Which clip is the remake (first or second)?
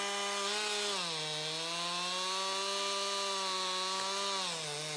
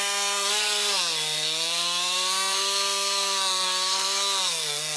second